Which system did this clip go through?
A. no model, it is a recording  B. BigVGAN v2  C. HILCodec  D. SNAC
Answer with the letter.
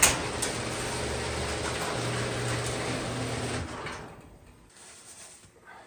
A